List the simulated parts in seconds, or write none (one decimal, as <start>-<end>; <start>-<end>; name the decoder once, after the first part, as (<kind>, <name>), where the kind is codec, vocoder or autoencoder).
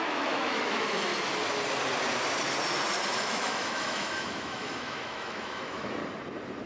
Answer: 0.0-1.1 (autoencoder, DAC-VAE); 3.2-6.0